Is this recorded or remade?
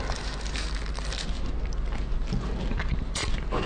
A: recorded